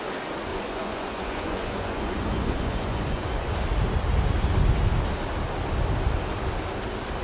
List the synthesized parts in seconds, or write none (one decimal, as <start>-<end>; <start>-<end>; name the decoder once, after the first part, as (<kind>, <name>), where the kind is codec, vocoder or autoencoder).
0.5-3.5 (vocoder, Vocos)